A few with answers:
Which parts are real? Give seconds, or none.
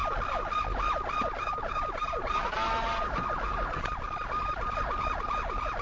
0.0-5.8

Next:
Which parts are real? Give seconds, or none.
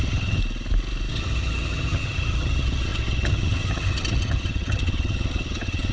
0.4-1.1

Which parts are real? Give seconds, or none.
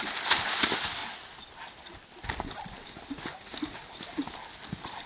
0.0-5.1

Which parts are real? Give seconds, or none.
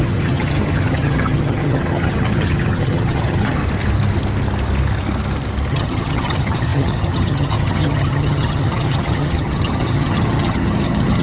3.6-5.7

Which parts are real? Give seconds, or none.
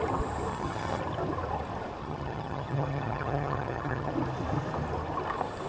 0.0-0.5; 1.0-2.0; 4.1-5.7